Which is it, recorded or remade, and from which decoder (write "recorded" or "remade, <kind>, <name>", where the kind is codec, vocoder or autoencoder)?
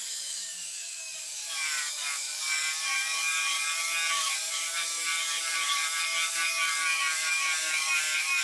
remade, codec, DAC